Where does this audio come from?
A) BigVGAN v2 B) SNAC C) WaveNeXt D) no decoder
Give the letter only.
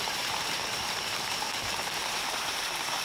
A